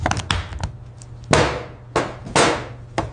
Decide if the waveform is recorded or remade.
recorded